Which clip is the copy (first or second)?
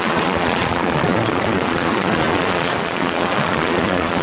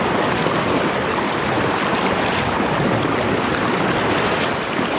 first